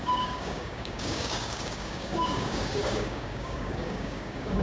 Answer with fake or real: fake